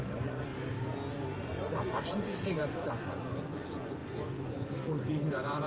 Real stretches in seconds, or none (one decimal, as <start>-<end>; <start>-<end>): 0.5-1.4